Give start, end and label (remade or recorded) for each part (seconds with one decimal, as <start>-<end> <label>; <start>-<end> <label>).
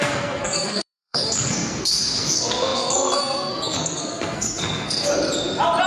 0.0-5.1 remade; 5.1-5.9 recorded